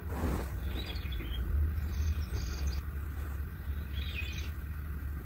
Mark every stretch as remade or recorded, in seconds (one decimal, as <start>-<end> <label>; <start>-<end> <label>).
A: 0.0-5.2 recorded